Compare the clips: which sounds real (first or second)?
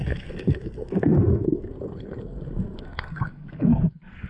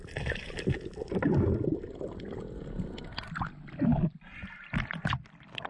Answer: second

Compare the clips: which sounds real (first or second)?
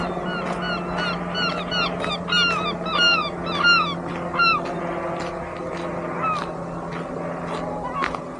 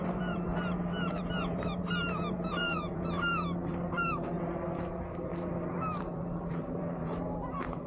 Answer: first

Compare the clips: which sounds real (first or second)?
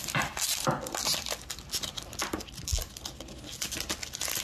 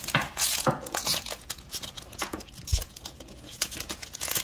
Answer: first